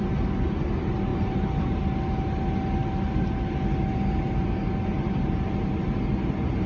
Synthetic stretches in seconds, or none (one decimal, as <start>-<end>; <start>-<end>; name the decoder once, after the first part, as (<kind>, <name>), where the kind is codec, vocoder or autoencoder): 1.1-1.8 (vocoder, BigVGAN v2)